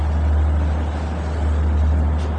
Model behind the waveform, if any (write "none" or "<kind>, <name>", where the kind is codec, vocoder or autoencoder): none